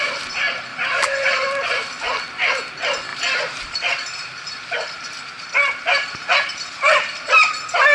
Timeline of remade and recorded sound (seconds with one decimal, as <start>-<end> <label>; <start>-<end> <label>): 0.0-0.7 recorded; 0.7-1.3 remade; 1.3-3.1 recorded; 3.1-7.3 remade; 7.3-7.9 recorded